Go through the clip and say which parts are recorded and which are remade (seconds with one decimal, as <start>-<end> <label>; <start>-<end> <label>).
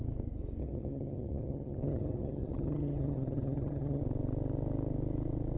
0.0-0.6 recorded; 0.6-4.0 remade; 4.0-5.6 recorded